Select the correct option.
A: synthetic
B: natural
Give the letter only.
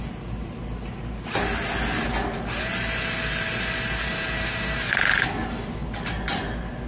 B